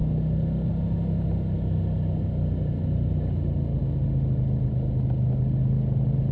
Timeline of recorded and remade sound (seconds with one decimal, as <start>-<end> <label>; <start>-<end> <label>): 0.0-6.3 recorded